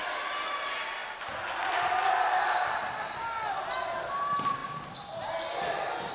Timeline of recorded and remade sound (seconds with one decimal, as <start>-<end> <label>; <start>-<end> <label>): 0.0-6.1 recorded